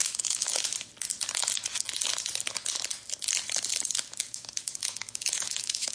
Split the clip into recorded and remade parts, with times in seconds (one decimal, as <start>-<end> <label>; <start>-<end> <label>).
0.0-0.7 remade; 0.7-4.2 recorded; 4.2-5.9 remade